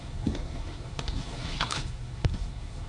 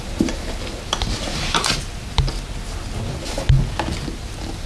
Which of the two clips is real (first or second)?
second